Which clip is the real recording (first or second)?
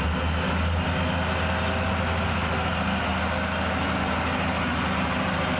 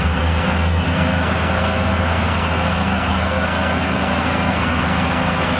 first